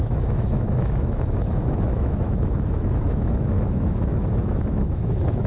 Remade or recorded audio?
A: remade